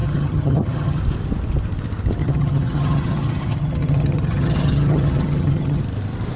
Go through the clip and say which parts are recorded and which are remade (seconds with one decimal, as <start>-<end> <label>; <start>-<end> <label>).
0.0-1.0 remade; 1.0-2.2 recorded; 2.2-5.8 remade; 5.8-6.4 recorded